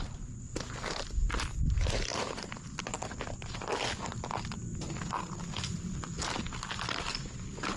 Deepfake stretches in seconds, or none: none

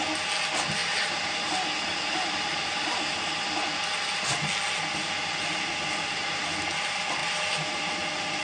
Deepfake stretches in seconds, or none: 0.8-1.4 (vocoder, BigVGAN v2); 1.9-3.1; 7.2-7.9

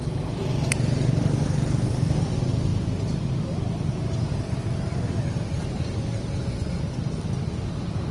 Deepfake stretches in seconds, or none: 6.4-7.0 (vocoder, Vocos)

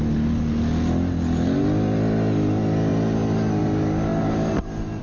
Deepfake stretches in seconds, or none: none

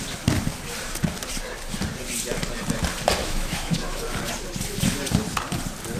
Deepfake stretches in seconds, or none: 3.2-4.0 (autoencoder, DAC-VAE)

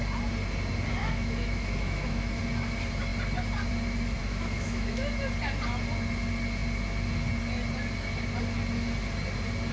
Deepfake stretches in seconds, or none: 1.0-2.4 (autoencoder, DAC-VAE); 4.2-5.2

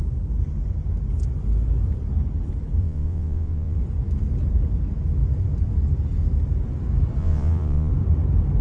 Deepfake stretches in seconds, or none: 2.8-3.8 (vocoder, Vocos); 7.2-7.9